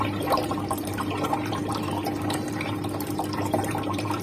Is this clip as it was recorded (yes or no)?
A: no